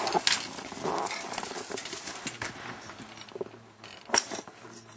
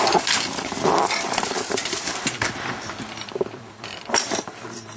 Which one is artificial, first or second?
second